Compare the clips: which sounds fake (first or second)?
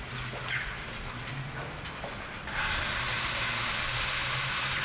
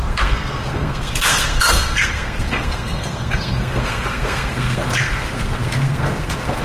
second